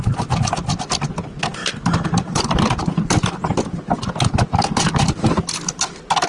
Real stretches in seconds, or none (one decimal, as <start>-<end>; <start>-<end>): 0.0-6.3

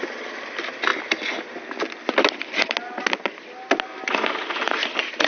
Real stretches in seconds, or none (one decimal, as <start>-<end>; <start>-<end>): 0.0-5.3

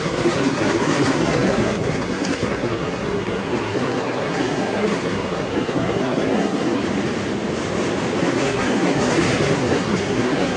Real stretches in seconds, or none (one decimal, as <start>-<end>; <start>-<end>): 6.8-8.2